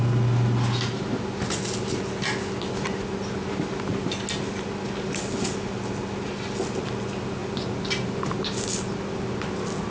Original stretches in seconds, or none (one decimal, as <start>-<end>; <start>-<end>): 0.0-9.9